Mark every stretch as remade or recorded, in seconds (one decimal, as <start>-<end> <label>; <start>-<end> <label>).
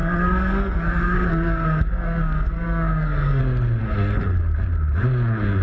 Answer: 0.0-3.4 remade; 3.4-3.8 recorded; 3.8-4.4 remade; 4.4-5.6 recorded